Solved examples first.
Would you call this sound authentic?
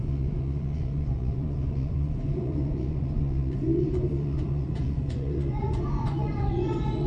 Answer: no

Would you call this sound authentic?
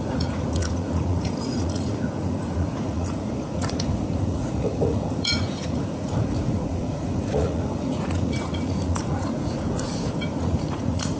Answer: no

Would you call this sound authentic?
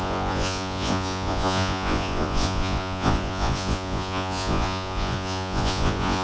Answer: no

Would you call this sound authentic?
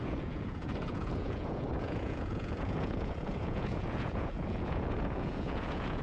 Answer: no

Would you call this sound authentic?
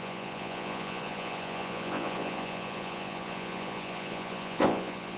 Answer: no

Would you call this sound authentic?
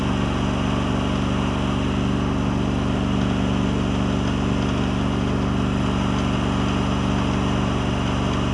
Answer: yes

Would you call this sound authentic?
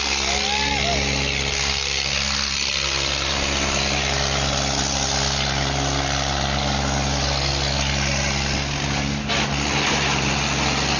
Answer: yes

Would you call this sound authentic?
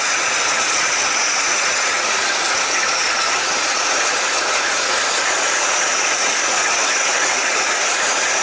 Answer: no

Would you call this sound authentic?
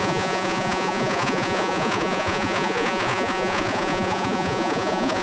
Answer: no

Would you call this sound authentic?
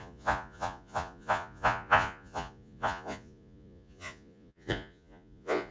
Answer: no